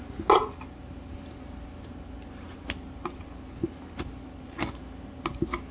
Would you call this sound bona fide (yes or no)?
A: yes